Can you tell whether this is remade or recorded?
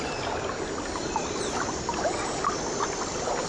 recorded